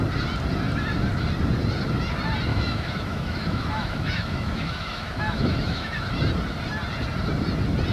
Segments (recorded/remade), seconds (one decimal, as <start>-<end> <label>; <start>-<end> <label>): 0.0-2.5 recorded; 2.5-6.1 remade; 6.1-7.9 recorded

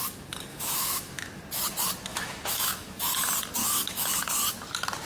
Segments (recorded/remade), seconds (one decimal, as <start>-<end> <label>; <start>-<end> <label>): 0.0-0.5 recorded; 0.5-1.4 remade; 1.4-2.1 recorded; 2.1-3.0 remade; 3.0-3.6 recorded; 3.6-4.3 remade; 4.3-5.1 recorded

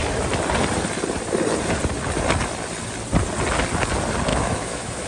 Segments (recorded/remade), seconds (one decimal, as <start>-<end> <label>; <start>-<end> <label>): 0.0-4.3 recorded; 4.3-5.1 remade

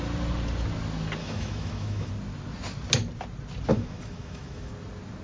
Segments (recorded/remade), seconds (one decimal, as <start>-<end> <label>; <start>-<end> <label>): 0.0-1.2 recorded; 1.2-2.1 remade; 2.1-3.7 recorded; 3.7-4.7 remade; 4.7-5.2 recorded

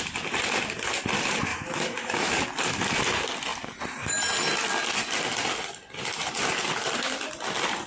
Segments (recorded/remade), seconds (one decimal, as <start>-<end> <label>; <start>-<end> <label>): 0.0-1.5 recorded; 1.5-2.3 remade; 2.3-7.9 recorded

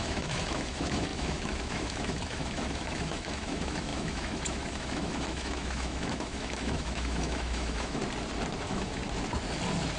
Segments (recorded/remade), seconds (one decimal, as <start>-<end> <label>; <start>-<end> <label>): 0.0-8.0 remade; 8.0-8.6 recorded; 8.6-9.0 remade; 9.0-10.0 recorded